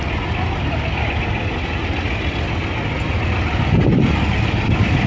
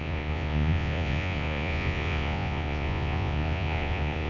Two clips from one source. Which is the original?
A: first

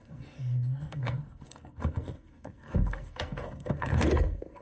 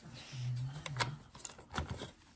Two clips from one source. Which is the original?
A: second